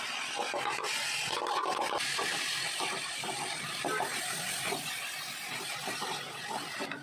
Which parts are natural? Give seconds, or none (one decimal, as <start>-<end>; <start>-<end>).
0.0-7.0